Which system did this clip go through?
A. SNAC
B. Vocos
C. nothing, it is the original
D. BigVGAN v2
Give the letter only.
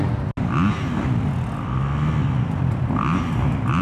C